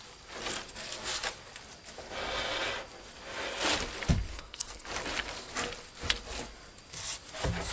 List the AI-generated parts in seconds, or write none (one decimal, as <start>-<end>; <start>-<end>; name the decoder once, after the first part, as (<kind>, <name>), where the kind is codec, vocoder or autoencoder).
4.3-4.9 (codec, SNAC)